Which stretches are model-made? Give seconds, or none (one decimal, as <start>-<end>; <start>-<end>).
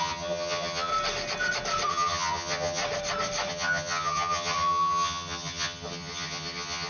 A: 0.0-0.9; 1.9-2.8; 3.5-6.9